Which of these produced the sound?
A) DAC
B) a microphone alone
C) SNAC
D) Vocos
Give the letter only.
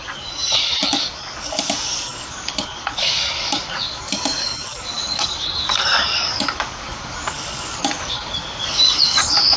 A